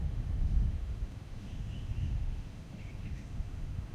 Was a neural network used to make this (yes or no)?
yes